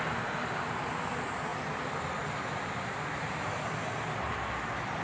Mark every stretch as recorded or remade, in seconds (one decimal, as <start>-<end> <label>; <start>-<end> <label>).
0.0-5.0 recorded